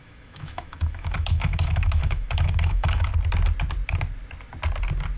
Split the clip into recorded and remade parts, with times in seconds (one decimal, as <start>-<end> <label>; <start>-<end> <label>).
0.0-3.1 remade; 3.1-5.2 recorded